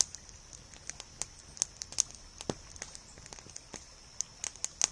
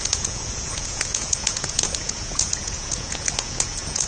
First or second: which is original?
first